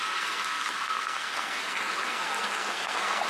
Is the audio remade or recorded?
remade